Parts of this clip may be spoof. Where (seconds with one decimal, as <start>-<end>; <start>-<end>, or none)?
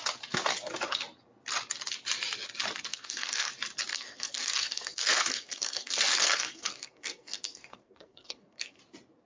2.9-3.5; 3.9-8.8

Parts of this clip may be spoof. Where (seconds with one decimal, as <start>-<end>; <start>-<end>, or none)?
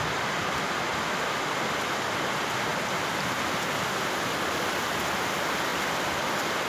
2.7-4.0; 5.7-6.3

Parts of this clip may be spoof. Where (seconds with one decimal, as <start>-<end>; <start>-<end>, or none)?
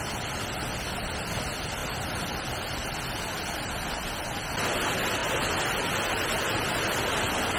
none